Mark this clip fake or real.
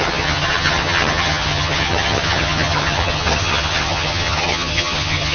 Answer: fake